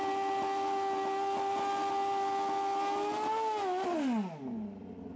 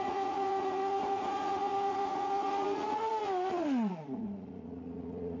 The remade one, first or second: second